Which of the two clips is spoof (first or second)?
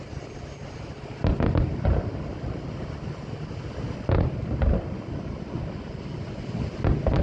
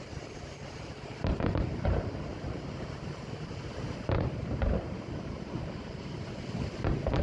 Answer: second